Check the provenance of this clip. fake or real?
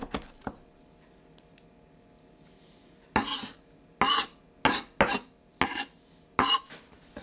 real